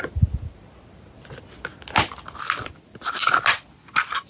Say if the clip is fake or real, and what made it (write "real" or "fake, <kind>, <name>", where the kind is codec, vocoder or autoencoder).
real